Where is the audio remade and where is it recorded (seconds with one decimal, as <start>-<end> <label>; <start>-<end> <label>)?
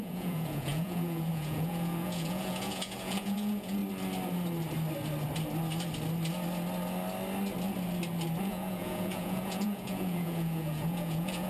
0.0-3.8 remade; 3.8-8.4 recorded; 8.4-11.5 remade